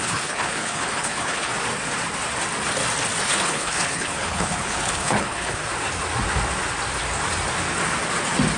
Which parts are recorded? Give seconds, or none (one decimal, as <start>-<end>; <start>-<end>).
1.5-3.2; 5.6-8.6